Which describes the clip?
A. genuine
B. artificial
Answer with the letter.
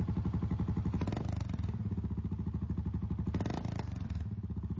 A